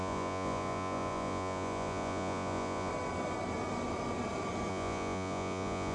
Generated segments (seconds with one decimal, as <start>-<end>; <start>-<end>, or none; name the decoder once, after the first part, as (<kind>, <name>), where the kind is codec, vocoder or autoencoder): 0.0-2.9 (vocoder, Vocos); 4.7-5.9